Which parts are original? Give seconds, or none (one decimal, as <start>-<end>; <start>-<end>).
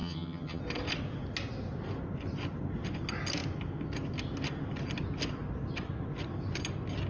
0.6-7.1